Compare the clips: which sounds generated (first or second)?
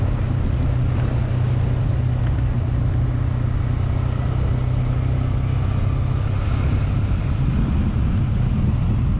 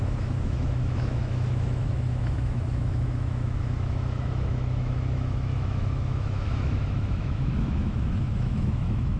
second